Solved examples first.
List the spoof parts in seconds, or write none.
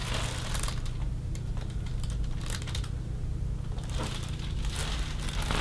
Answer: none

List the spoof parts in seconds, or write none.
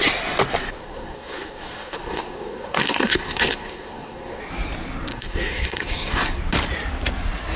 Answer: 0.8-4.4 (codec, SNAC); 5.1-6.4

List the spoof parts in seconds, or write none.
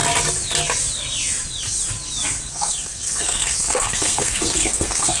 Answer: 2.5-5.2 (codec, SNAC)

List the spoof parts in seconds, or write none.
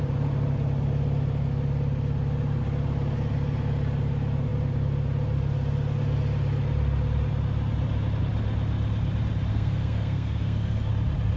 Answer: 9.5-10.9 (codec, SNAC)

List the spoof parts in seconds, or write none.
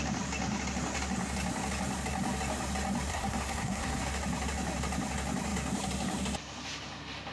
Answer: 3.1-4.0 (codec, SNAC)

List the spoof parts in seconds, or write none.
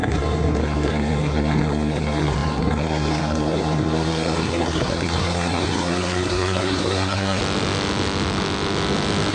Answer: 0.0-7.4 (codec, SNAC)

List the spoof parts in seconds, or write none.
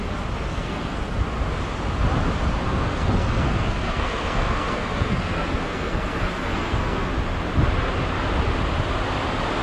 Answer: 0.5-1.2 (codec, SNAC); 2.6-7.1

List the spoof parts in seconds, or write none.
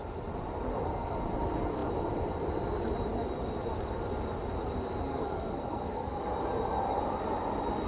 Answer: 5.1-6.2 (codec, SNAC)